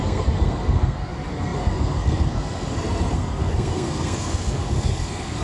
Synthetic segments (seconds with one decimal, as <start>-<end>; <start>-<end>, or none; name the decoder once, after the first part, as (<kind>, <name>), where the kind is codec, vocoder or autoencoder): 0.0-5.4 (codec, SNAC)